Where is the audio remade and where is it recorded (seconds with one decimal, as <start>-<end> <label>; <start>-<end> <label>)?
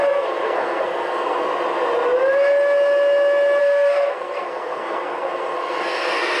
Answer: 0.0-1.5 remade; 1.5-3.6 recorded; 3.6-6.4 remade